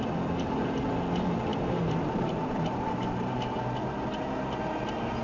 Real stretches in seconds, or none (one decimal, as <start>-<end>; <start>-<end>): 0.0-1.5; 3.5-5.2